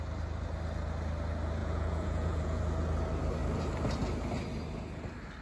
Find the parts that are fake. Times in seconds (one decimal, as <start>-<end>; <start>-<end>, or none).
1.6-2.6